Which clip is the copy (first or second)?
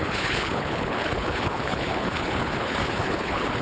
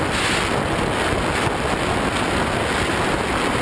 first